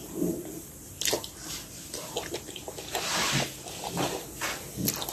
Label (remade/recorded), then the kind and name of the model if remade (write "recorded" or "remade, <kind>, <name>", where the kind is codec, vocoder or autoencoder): recorded